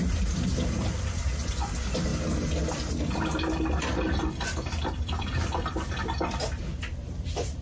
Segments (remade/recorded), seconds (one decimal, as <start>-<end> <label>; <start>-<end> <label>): 0.0-2.1 remade; 2.1-4.3 recorded; 4.3-7.6 remade